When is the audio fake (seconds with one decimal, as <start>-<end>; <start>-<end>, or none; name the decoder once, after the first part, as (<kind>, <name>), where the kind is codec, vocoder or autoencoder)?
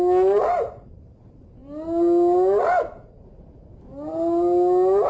none